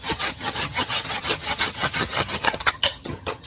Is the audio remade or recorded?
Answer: remade